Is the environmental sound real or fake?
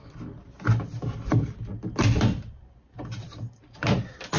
real